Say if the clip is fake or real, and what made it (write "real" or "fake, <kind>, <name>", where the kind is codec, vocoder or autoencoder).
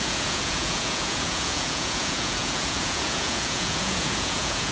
fake, vocoder, Vocos